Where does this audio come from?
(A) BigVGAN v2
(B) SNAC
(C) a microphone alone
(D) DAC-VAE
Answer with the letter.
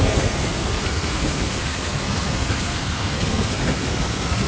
B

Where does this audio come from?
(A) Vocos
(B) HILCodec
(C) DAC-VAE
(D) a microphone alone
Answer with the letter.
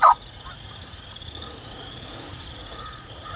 A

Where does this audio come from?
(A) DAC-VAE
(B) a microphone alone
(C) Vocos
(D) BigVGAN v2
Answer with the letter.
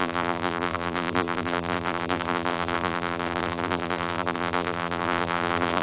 D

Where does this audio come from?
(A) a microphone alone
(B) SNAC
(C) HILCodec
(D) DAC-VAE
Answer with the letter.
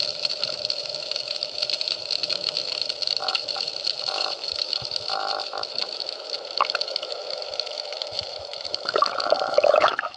D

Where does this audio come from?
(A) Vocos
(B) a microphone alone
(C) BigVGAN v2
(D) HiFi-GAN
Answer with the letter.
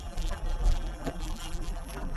C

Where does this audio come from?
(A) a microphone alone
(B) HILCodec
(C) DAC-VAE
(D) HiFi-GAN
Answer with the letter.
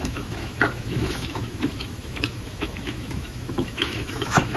C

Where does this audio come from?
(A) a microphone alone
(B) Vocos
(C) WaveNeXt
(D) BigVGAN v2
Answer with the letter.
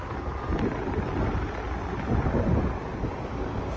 A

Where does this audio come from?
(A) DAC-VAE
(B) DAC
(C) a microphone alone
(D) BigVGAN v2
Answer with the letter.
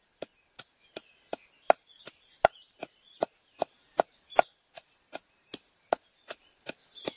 C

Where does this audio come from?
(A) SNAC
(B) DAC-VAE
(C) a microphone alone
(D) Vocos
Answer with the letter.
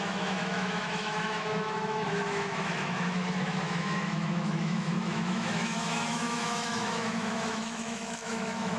B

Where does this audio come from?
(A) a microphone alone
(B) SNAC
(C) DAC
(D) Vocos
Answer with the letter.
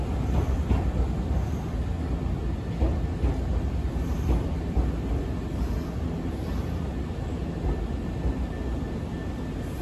A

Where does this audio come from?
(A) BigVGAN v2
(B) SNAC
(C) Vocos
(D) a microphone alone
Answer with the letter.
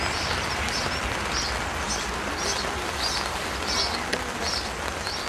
D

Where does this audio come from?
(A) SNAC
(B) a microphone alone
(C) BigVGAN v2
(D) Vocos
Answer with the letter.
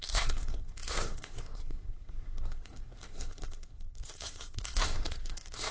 A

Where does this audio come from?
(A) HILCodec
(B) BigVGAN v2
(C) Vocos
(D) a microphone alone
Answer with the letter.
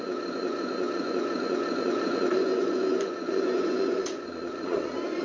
C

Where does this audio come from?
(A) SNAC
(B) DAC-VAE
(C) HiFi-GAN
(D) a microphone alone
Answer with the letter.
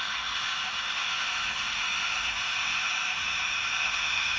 B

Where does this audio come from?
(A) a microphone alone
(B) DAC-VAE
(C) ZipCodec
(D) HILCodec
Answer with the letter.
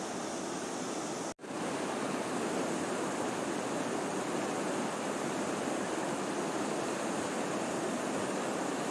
A